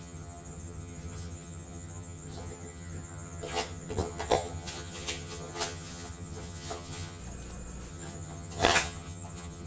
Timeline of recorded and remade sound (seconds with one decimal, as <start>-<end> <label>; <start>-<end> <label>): 0.0-7.2 remade; 7.2-7.9 recorded; 7.9-9.7 remade